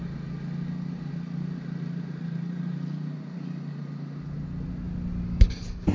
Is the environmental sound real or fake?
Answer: real